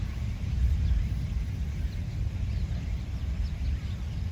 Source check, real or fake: real